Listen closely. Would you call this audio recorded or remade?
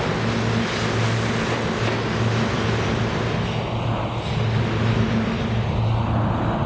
recorded